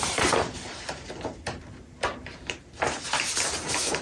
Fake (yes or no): yes